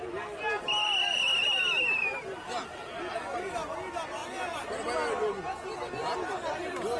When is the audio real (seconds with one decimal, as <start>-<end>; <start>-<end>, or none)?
0.0-7.0